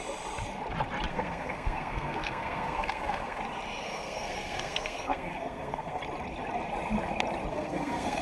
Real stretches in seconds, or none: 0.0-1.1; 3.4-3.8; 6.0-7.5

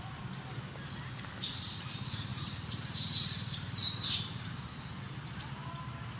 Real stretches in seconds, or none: 0.0-2.3; 4.9-6.2

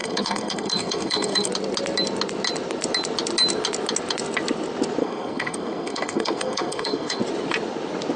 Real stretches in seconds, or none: 1.5-5.0; 7.2-8.2

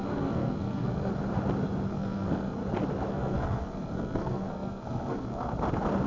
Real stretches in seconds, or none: 1.1-1.9; 2.6-3.1; 5.5-6.1

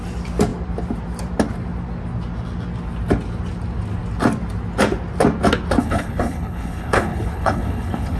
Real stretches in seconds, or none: 0.0-5.8

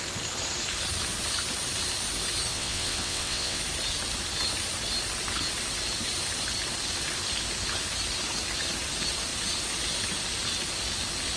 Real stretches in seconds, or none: 0.0-2.5; 3.6-11.4

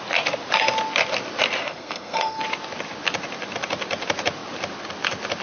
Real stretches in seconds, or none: 0.0-1.6; 2.4-5.4